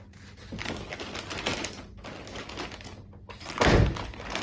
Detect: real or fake real